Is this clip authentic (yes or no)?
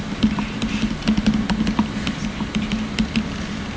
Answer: yes